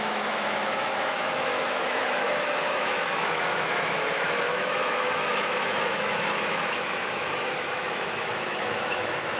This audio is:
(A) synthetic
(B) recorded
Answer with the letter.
A